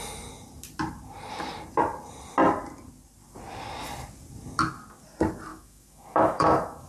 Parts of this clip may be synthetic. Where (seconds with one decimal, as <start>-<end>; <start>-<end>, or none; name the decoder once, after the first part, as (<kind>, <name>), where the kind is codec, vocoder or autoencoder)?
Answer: 5.5-6.9 (autoencoder, DAC-VAE)